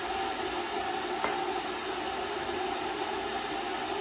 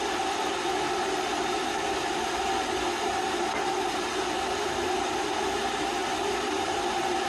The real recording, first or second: first